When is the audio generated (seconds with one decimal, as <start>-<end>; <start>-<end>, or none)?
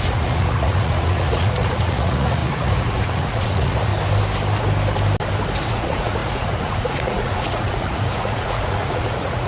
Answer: 0.0-3.9; 5.7-9.5